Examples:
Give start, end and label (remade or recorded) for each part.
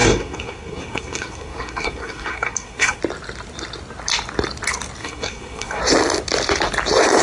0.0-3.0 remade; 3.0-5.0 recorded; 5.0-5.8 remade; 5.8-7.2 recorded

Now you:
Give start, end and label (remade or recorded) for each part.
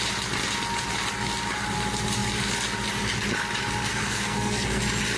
0.0-3.9 recorded; 3.9-4.8 remade; 4.8-5.2 recorded